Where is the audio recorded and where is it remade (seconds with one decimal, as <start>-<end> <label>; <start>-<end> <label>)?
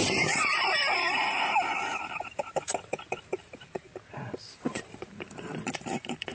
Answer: 0.0-3.9 remade; 3.9-4.4 recorded; 4.4-6.3 remade